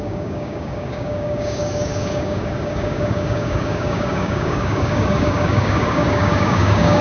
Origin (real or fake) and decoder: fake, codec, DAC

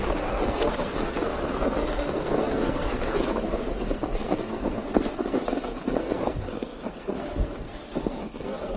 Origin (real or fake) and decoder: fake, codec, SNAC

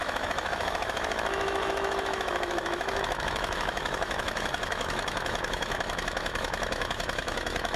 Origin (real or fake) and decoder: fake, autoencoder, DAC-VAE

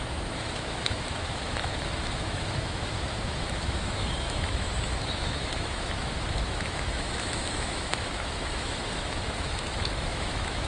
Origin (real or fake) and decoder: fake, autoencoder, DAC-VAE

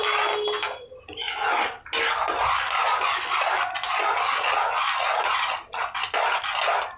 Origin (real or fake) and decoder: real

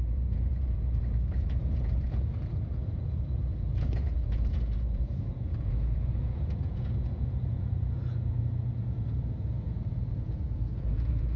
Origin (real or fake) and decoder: fake, vocoder, Vocos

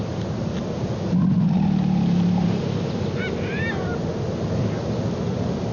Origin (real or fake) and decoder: real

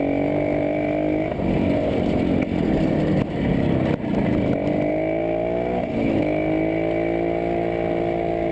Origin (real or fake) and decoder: real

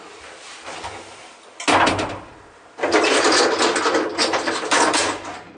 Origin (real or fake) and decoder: real